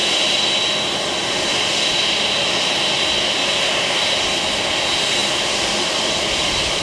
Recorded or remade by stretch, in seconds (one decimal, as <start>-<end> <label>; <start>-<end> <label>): 0.0-5.2 recorded; 5.2-6.8 remade